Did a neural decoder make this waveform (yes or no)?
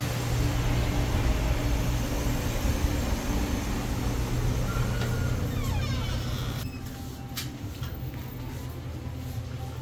no